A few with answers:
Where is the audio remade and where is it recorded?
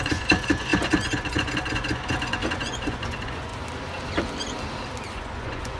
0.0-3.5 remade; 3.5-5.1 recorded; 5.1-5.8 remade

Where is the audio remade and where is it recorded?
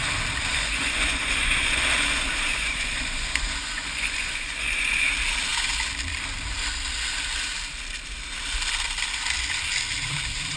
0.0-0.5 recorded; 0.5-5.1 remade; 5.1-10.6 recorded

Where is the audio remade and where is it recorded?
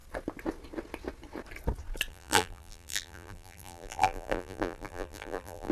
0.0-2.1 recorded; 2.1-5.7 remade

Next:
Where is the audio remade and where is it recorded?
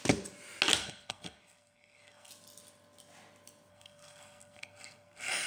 0.0-0.8 recorded; 0.8-2.3 remade; 2.3-3.7 recorded; 3.7-5.5 remade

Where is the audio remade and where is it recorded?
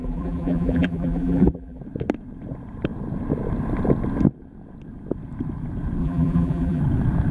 0.0-1.8 remade; 1.8-6.0 recorded; 6.0-6.8 remade; 6.8-7.3 recorded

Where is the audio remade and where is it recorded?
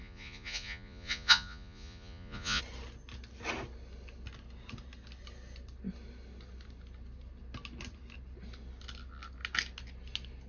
0.0-2.6 remade; 2.6-10.5 recorded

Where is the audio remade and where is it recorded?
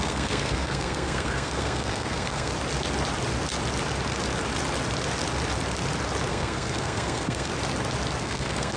0.0-2.5 remade; 2.5-6.3 recorded; 6.3-7.5 remade; 7.5-8.2 recorded; 8.2-8.8 remade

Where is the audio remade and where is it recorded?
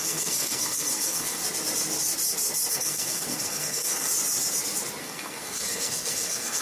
0.0-1.4 remade; 1.4-2.7 recorded; 2.7-4.1 remade; 4.1-5.0 recorded; 5.0-6.6 remade